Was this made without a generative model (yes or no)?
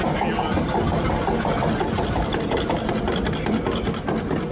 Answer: yes